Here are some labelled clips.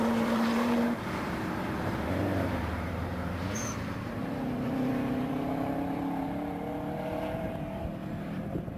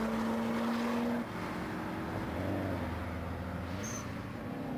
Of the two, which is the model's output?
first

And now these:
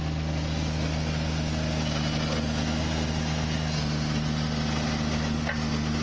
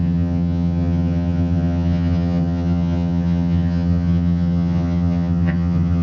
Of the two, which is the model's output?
second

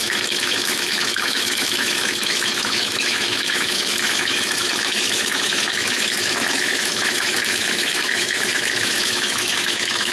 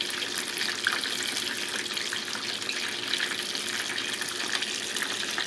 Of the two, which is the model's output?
first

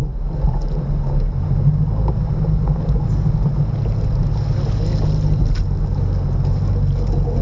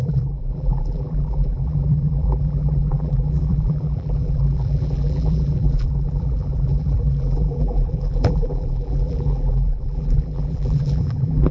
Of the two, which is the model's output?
second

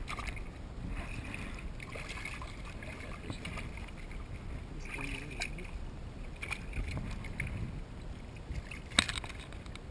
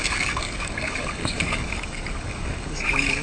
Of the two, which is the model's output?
second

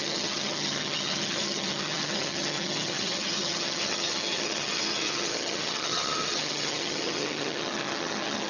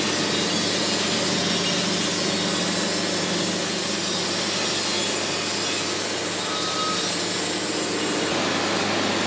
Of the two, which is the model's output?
first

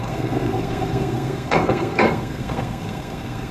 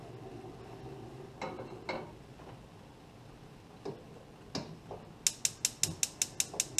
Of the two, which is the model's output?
first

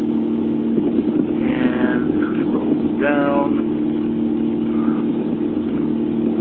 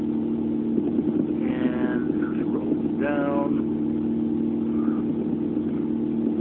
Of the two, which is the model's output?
first